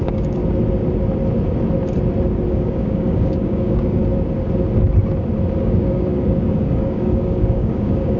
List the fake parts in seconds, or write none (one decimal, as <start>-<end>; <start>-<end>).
0.0-0.4; 2.5-4.0; 5.6-8.2